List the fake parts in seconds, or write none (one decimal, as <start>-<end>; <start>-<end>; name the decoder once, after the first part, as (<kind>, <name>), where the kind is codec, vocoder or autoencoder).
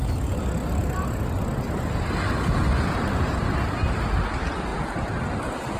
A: none